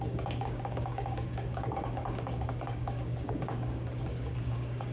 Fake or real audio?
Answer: fake